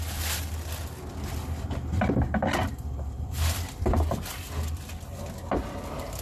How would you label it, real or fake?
real